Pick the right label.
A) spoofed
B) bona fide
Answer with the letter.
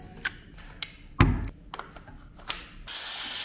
B